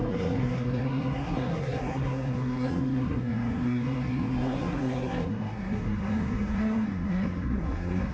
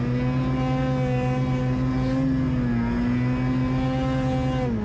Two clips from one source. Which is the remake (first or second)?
first